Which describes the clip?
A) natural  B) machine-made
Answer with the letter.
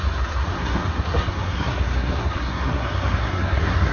B